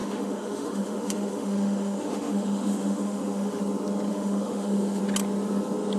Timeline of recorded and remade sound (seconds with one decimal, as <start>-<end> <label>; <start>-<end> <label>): 0.0-3.6 remade; 3.6-4.1 recorded; 4.1-5.0 remade; 5.0-6.0 recorded